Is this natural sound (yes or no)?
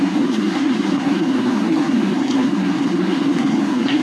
no